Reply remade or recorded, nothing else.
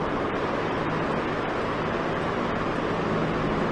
recorded